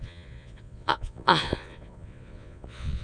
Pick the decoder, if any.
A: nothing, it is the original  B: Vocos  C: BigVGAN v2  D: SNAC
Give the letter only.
B